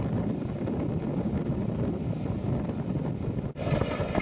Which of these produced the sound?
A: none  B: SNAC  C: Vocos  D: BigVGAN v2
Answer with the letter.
A